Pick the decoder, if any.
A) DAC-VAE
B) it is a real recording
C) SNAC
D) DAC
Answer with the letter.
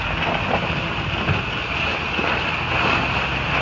B